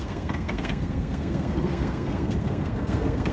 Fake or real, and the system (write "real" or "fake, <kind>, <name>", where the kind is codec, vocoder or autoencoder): fake, codec, SNAC